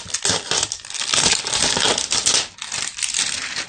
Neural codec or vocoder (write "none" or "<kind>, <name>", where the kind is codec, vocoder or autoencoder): none